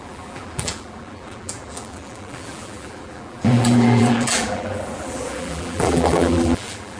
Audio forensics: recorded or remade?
remade